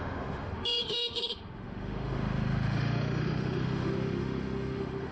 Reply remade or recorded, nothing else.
remade